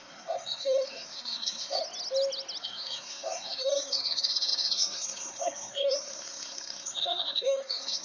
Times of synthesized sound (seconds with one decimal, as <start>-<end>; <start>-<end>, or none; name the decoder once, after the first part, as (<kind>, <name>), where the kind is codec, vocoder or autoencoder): 0.0-1.8 (codec, SNAC); 2.6-8.0